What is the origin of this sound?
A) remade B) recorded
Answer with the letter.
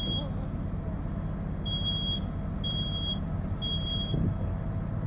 B